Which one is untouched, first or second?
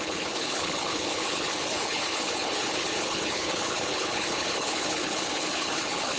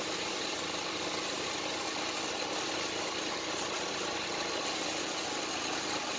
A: second